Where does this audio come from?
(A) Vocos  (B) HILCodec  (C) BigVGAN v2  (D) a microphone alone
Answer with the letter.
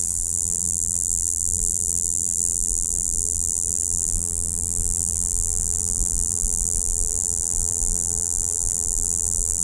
C